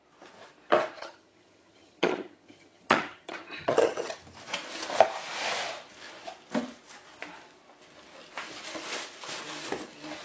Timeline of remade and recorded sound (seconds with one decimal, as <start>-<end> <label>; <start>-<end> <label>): 0.0-0.9 recorded; 0.9-4.2 remade; 4.2-10.2 recorded